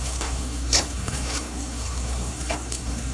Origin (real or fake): fake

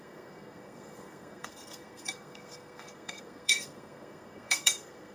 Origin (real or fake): fake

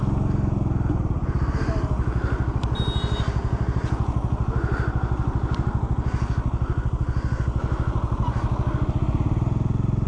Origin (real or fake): real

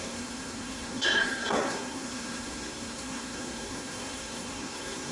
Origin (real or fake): fake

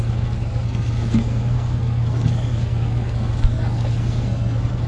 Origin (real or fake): fake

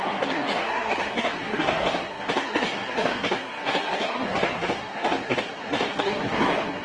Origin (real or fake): fake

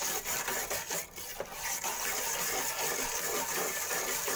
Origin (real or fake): real